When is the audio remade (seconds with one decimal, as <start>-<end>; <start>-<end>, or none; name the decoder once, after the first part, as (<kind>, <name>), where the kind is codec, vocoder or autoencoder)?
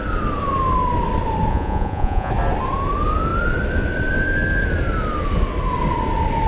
1.5-2.3 (vocoder, Vocos)